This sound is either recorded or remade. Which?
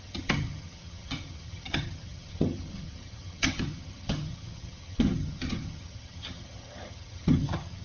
remade